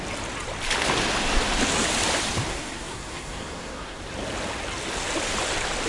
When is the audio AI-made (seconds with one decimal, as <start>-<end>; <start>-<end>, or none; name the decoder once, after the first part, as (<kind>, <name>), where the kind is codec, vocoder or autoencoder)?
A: 2.5-4.0 (codec, SNAC)